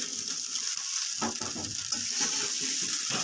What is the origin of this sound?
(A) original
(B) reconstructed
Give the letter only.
A